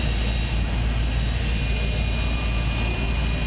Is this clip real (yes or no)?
yes